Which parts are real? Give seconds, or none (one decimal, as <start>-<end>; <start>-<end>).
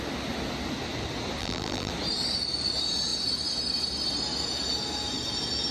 0.0-1.4; 1.9-5.7